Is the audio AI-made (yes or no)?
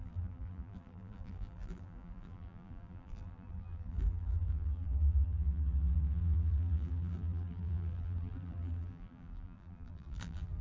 yes